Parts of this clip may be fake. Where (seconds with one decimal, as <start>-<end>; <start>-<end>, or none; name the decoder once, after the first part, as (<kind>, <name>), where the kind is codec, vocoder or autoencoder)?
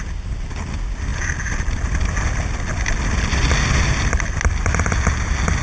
none